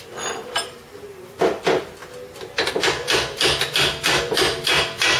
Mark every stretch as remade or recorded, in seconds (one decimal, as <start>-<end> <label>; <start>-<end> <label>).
0.0-5.2 recorded